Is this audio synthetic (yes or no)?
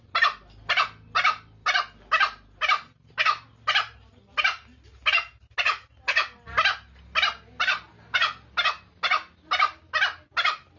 no